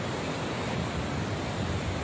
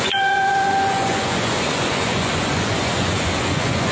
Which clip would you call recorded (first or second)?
first